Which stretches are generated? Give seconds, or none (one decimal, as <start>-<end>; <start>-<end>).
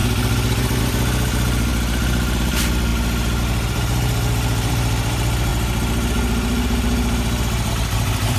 none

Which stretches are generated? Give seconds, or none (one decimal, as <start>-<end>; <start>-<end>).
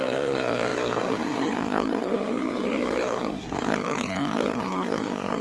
0.0-5.4